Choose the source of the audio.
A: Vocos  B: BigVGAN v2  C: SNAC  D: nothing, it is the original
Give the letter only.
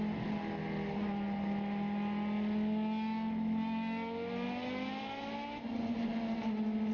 D